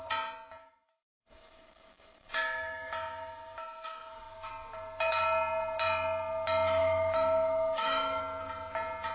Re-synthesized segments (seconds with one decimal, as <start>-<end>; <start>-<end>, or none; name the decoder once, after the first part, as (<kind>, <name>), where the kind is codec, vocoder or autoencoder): 0.6-4.5 (autoencoder, DAC-VAE); 6.8-8.2